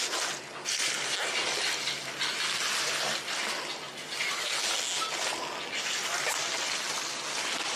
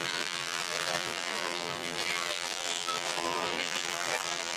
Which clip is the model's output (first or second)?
second